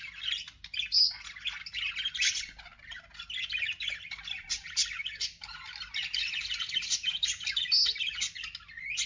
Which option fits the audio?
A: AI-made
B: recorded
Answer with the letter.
B